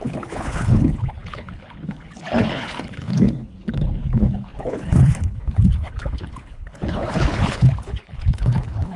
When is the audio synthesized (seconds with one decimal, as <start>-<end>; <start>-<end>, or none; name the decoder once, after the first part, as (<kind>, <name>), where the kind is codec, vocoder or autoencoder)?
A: 0.0-9.0 (codec, HILCodec)